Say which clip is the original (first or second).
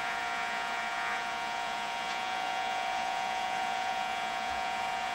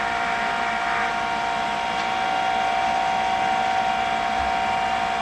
second